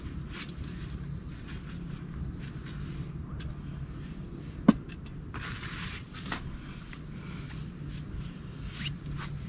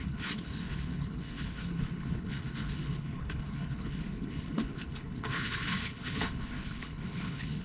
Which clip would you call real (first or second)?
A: first